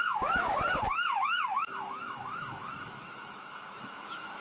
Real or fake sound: fake